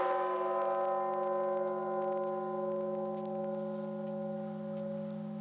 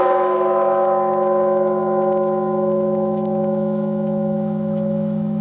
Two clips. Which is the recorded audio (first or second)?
first